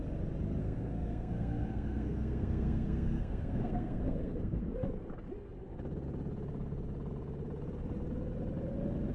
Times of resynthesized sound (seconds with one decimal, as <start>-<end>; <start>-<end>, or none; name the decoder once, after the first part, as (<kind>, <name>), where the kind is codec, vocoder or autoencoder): 0.6-4.7 (codec, SNAC)